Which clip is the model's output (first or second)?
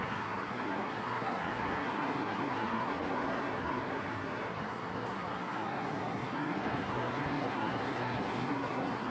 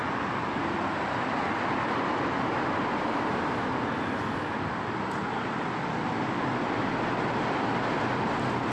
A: first